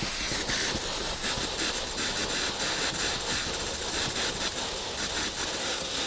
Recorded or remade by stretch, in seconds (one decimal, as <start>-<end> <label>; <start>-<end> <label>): 0.0-5.6 recorded; 5.6-6.1 remade

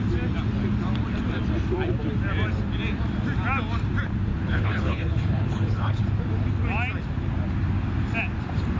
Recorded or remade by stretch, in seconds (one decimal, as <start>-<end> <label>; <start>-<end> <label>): 0.0-4.3 recorded; 4.3-6.0 remade; 6.0-8.8 recorded

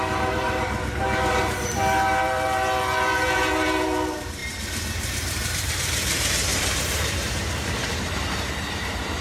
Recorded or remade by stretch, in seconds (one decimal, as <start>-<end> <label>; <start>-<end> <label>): 0.0-9.2 remade

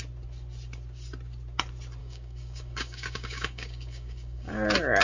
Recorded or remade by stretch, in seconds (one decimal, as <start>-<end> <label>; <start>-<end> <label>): 0.0-2.0 recorded; 2.0-4.5 remade; 4.5-5.0 recorded

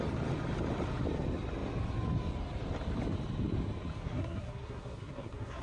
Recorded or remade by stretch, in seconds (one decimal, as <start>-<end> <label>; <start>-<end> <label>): 0.0-4.0 recorded; 4.0-5.6 remade

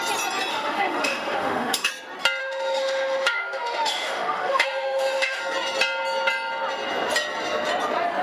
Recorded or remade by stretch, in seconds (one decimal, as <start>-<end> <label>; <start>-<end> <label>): 0.0-0.5 recorded; 0.5-1.9 remade; 1.9-2.4 recorded; 2.4-5.4 remade; 5.4-8.2 recorded

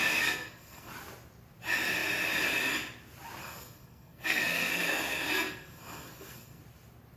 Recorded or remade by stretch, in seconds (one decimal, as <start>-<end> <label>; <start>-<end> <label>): 0.0-0.9 remade; 0.9-3.4 recorded; 3.4-6.6 remade; 6.6-7.2 recorded